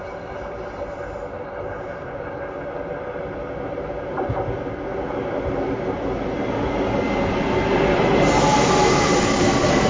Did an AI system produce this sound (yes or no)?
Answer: no